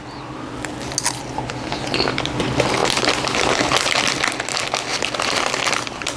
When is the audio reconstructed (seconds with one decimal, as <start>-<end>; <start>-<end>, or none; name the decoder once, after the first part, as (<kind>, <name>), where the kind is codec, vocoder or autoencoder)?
4.9-6.2 (vocoder, BigVGAN v2)